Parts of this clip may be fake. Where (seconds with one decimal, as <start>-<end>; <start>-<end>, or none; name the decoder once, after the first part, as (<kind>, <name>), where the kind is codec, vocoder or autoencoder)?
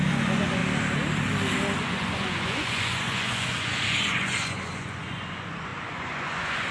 0.0-0.6 (vocoder, Vocos); 1.8-6.7